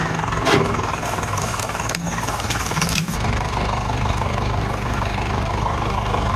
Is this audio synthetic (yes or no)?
yes